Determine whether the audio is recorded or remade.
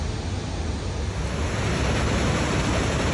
recorded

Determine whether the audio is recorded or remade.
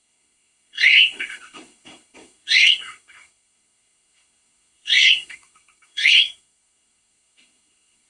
remade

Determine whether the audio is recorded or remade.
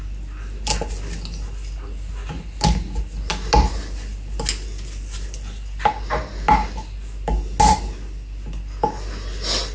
recorded